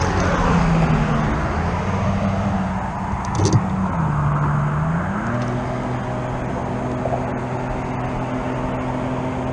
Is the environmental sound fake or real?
real